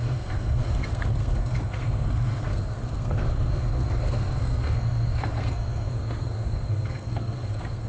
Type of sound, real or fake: fake